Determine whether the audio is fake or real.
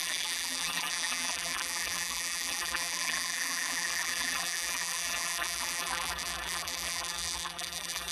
fake